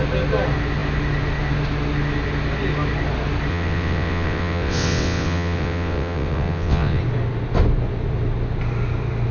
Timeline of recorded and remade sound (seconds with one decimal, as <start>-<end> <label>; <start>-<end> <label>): 0.0-3.5 recorded; 3.5-7.0 remade; 7.0-9.3 recorded